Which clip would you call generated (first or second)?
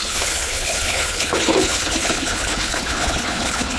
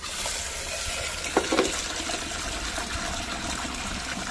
first